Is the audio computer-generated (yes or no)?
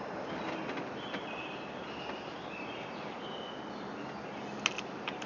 no